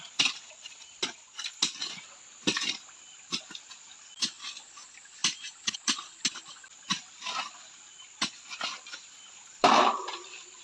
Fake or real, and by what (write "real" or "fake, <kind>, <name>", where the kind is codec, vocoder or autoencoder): real